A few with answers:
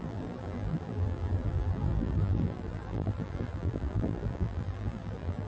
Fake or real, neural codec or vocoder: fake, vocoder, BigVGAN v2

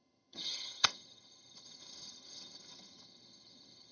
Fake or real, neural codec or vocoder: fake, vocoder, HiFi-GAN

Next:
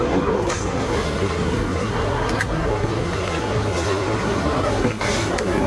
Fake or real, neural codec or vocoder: fake, codec, SNAC